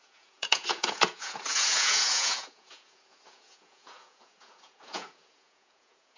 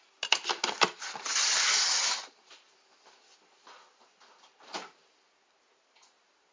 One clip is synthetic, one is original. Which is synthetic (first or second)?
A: first